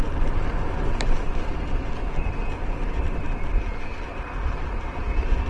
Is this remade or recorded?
recorded